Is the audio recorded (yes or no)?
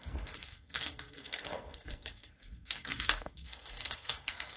no